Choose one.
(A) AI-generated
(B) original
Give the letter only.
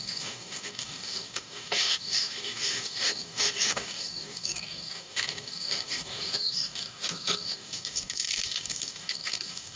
A